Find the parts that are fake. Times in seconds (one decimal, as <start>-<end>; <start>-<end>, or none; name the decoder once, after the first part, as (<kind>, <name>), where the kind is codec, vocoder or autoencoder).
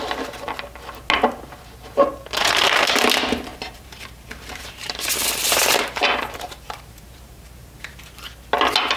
2.4-3.0 (vocoder, BigVGAN v2); 3.5-8.0